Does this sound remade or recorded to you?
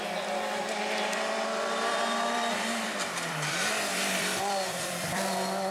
remade